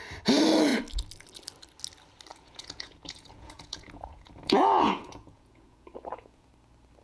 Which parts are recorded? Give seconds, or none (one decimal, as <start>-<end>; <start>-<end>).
0.0-2.3; 6.5-7.0